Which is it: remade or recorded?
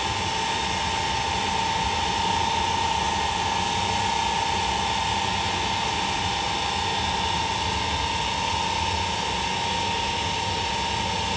recorded